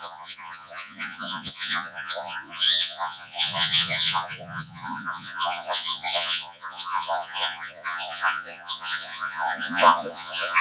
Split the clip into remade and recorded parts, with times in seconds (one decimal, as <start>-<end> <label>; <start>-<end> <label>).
0.0-10.6 remade